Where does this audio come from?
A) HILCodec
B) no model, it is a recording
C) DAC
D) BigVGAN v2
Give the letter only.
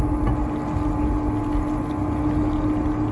B